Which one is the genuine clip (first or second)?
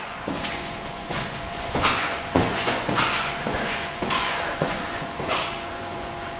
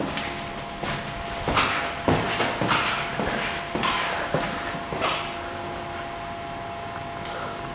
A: second